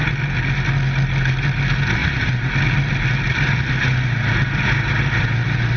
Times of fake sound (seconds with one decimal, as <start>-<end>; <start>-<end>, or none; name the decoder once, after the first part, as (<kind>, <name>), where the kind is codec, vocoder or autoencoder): none